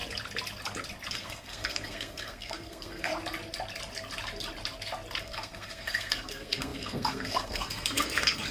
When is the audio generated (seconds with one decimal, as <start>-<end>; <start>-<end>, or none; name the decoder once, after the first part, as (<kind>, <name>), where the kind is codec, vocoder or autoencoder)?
1.1-3.1 (codec, SNAC); 5.2-8.5